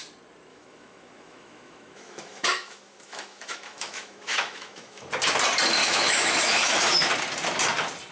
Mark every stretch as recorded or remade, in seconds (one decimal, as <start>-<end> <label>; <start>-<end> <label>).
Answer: 0.0-0.5 recorded; 0.5-5.1 remade; 5.1-5.8 recorded; 5.8-7.1 remade; 7.1-8.1 recorded